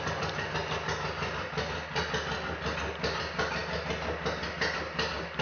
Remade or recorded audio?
recorded